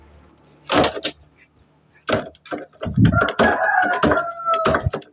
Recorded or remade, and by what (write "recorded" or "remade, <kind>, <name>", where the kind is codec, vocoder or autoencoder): recorded